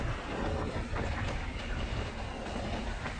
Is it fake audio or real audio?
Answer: real